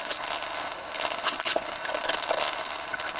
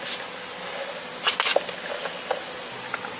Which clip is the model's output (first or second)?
first